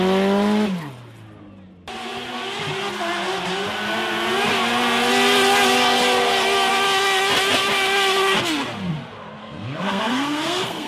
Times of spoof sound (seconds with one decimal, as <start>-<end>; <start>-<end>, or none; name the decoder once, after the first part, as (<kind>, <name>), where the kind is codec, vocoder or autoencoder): 9.4-10.9 (codec, SNAC)